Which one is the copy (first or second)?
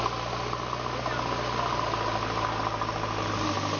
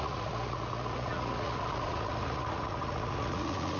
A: second